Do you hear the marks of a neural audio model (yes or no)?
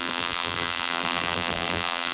yes